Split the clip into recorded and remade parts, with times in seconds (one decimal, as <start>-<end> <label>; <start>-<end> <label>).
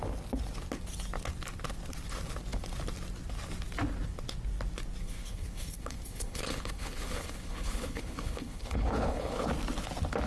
0.0-5.0 recorded; 5.0-9.5 remade; 9.5-10.3 recorded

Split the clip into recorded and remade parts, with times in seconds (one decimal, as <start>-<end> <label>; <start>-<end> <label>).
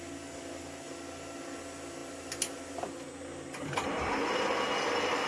0.0-5.3 recorded